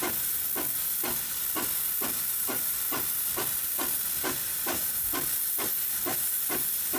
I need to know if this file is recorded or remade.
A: recorded